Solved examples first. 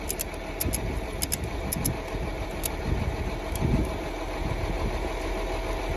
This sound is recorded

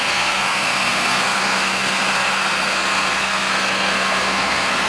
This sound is remade